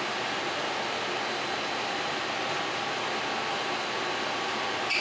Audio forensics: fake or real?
real